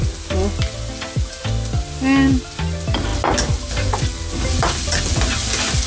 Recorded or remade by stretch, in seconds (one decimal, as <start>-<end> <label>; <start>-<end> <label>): 0.0-5.9 recorded